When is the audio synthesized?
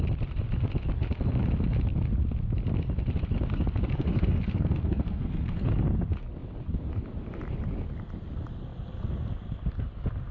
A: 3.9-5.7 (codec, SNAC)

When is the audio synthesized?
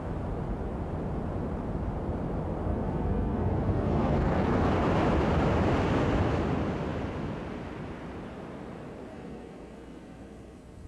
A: 2.7-4.7 (codec, SNAC); 9.1-10.9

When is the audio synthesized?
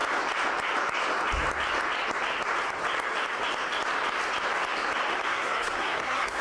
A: 5.3-6.4 (codec, SNAC)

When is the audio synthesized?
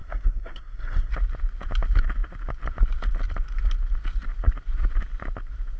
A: 0.0-1.1 (codec, SNAC)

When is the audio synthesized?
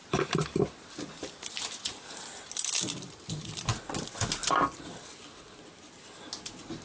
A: none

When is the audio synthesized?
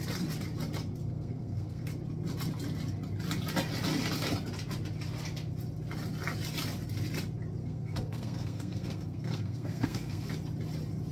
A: 1.0-1.9 (codec, SNAC); 7.6-10.3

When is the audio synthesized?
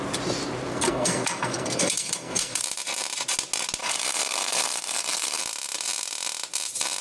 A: 0.7-2.6 (codec, SNAC); 3.8-5.4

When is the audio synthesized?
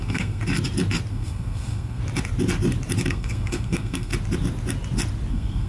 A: 0.0-0.4 (codec, SNAC); 1.1-2.0; 3.1-4.1; 5.3-5.7